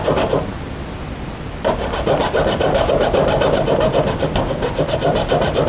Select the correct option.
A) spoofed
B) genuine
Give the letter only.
B